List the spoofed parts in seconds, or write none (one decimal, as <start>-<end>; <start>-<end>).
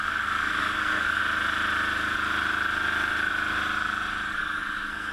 0.0-1.2; 4.3-5.1